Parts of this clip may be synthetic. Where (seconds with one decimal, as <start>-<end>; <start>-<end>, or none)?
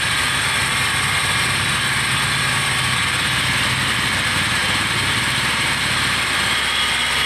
4.6-6.3